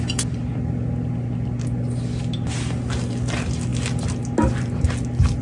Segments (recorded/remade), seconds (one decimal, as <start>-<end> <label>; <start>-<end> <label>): 0.0-5.4 recorded